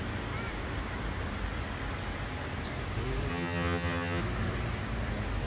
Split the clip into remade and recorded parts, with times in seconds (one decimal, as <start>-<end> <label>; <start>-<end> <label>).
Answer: 0.0-3.3 recorded; 3.3-4.2 remade; 4.2-5.5 recorded